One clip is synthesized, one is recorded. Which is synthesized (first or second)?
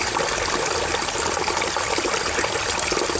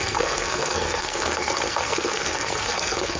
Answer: second